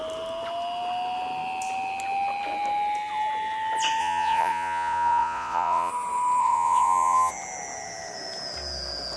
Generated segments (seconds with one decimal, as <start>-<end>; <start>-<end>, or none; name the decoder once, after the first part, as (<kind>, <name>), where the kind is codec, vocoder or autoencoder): 4.0-5.9 (vocoder, Vocos); 6.4-7.3